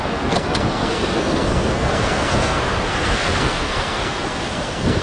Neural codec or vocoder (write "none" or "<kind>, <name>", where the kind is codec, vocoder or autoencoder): codec, SNAC